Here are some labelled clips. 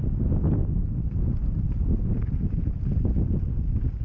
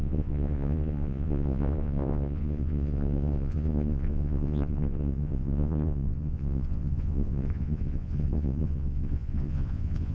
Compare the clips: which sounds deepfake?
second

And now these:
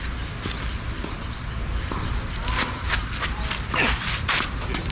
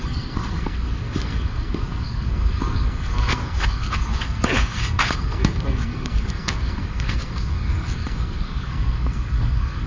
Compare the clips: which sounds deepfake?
second